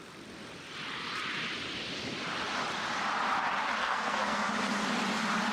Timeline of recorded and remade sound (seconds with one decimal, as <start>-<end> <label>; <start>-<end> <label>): 0.0-3.8 recorded; 3.8-4.5 remade; 4.5-5.5 recorded